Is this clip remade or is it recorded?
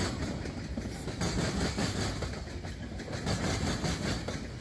remade